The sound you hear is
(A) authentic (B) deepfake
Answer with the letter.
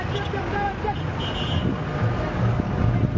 A